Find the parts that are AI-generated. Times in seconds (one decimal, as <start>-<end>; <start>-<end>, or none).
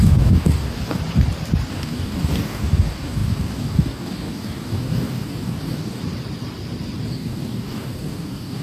0.0-1.0; 1.7-6.0; 7.1-8.6